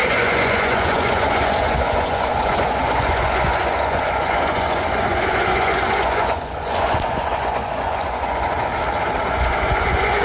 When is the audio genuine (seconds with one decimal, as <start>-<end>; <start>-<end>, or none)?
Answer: 8.7-9.2